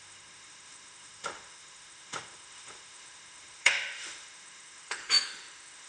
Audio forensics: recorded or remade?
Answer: remade